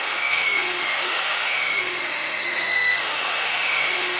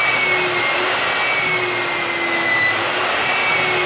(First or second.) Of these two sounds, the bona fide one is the second